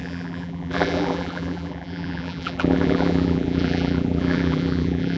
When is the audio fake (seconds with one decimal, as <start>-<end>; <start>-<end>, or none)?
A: 0.0-5.2